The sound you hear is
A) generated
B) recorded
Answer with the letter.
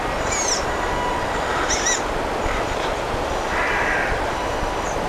B